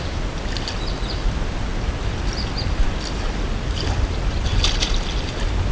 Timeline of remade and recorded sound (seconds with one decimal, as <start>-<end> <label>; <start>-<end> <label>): 0.0-5.7 recorded

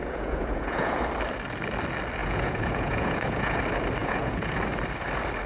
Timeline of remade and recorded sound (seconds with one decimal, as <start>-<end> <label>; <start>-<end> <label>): 0.0-1.0 remade; 1.0-2.2 recorded; 2.2-3.6 remade; 3.6-4.0 recorded; 4.0-4.5 remade; 4.5-5.5 recorded

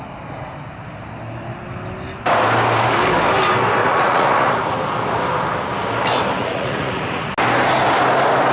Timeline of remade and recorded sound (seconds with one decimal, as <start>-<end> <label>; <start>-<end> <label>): 0.0-3.8 recorded; 3.8-4.7 remade; 4.7-6.4 recorded; 6.4-7.3 remade; 7.3-8.5 recorded

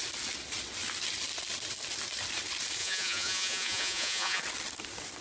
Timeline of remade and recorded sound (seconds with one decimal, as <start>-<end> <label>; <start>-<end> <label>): 0.0-2.8 recorded; 2.8-4.4 remade; 4.4-5.2 recorded

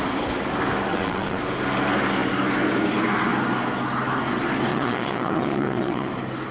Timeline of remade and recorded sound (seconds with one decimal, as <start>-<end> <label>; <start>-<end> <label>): 0.0-0.9 recorded; 0.9-1.4 remade; 1.4-4.7 recorded; 4.7-6.1 remade; 6.1-6.5 recorded

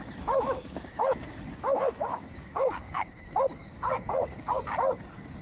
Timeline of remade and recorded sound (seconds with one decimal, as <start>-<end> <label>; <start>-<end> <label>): 0.0-3.2 remade; 3.2-3.7 recorded; 3.7-4.6 remade; 4.6-5.4 recorded

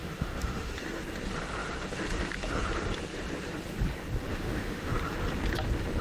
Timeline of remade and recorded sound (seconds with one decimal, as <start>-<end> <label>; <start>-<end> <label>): 0.0-0.7 remade; 0.7-4.3 recorded; 4.3-4.9 remade; 4.9-6.0 recorded

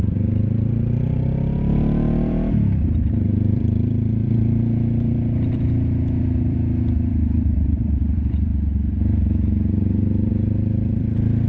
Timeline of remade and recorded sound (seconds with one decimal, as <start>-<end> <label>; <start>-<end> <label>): 0.0-8.5 remade; 8.5-10.3 recorded; 10.3-11.5 remade